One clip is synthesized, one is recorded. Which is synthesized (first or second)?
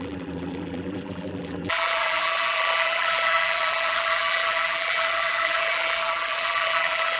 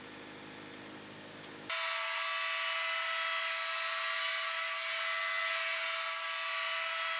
first